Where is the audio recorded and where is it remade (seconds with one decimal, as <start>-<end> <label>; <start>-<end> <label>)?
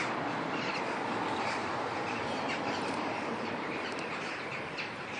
0.0-1.6 recorded; 1.6-4.7 remade; 4.7-5.2 recorded